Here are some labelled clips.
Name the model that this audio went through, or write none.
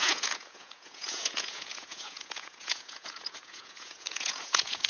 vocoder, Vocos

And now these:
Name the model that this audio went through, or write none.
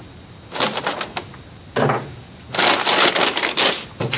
none